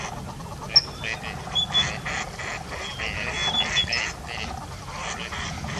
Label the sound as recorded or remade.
recorded